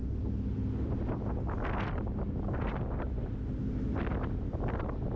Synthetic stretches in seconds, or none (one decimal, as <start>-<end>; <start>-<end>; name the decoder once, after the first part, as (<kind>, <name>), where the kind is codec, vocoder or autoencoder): none

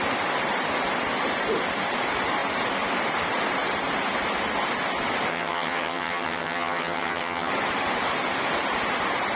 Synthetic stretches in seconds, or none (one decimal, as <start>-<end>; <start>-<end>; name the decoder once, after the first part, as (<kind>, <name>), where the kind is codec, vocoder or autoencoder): 5.3-7.5 (vocoder, HiFi-GAN)

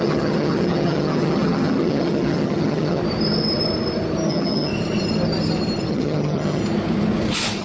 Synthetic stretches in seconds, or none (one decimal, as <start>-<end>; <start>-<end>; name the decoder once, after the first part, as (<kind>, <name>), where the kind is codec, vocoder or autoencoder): 0.0-3.0 (vocoder, HiFi-GAN); 4.3-4.7; 5.9-6.6

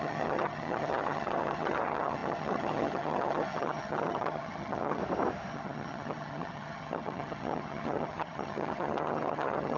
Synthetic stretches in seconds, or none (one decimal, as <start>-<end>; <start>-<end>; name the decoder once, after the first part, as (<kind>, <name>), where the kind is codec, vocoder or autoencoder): 0.0-5.0 (vocoder, HiFi-GAN); 5.5-9.8

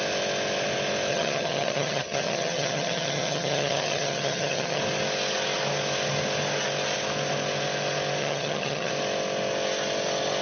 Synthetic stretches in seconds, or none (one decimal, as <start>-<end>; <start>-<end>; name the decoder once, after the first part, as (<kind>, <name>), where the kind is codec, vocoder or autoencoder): 1.1-4.8 (vocoder, HiFi-GAN); 8.2-8.9